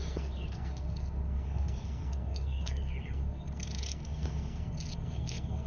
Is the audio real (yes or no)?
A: no